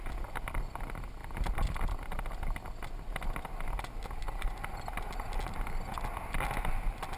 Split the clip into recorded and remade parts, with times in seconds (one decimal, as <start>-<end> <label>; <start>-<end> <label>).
0.0-7.2 recorded